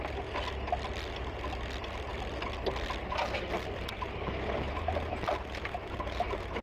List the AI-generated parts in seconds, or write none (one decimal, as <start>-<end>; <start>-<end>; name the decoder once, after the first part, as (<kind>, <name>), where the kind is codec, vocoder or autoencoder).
none